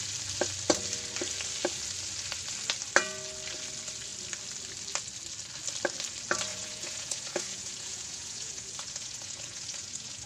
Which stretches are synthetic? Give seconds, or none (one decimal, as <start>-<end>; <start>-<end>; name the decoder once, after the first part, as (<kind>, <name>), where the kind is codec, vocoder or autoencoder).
6.5-10.3 (vocoder, Vocos)